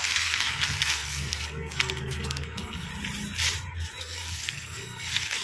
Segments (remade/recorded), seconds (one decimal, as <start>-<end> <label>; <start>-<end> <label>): 0.0-2.9 remade; 2.9-4.0 recorded; 4.0-5.4 remade